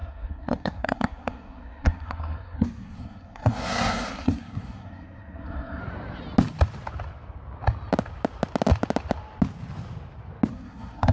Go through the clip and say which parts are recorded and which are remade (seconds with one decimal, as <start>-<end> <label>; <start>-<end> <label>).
0.0-5.8 remade; 5.8-10.5 recorded; 10.5-11.1 remade